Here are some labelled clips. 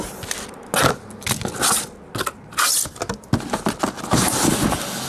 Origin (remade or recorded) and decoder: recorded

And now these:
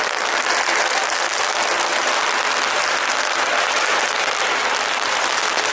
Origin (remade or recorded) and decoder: recorded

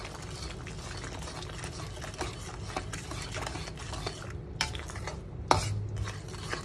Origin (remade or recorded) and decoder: recorded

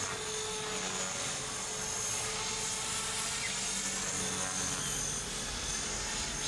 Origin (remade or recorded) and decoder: recorded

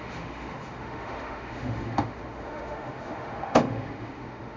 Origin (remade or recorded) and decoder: remade, autoencoder, DAC-VAE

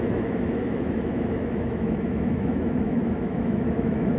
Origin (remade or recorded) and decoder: remade, autoencoder, DAC-VAE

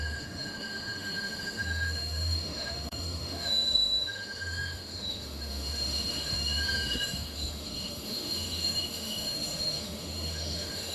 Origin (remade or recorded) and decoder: remade, autoencoder, DAC-VAE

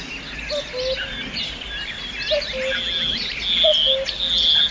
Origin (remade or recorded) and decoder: recorded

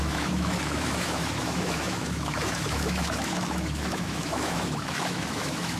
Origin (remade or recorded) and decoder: remade, autoencoder, DAC-VAE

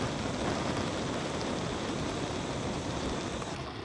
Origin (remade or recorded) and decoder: recorded